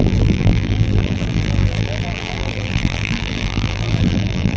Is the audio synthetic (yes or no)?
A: yes